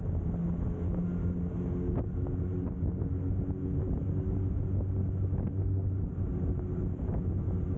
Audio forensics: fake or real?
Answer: real